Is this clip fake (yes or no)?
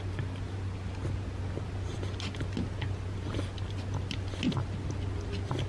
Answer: no